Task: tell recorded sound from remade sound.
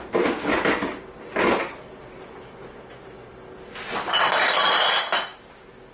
recorded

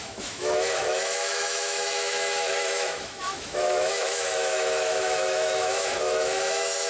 remade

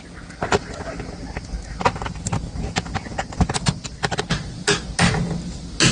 recorded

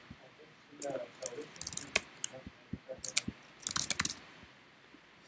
recorded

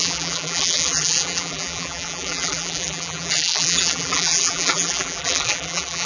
remade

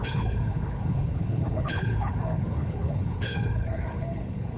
remade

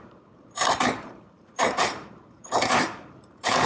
remade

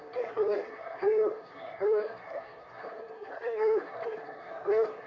remade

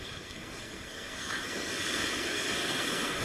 remade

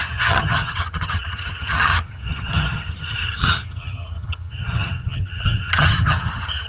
remade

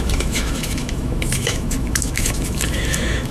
remade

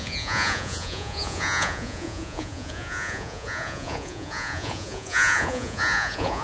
remade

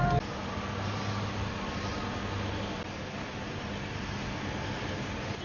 recorded